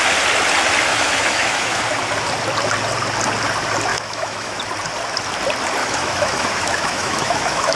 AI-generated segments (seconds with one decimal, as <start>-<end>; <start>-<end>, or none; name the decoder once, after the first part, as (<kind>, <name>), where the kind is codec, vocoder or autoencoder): 0.9-1.8 (autoencoder, DAC-VAE); 3.9-4.6; 5.8-7.8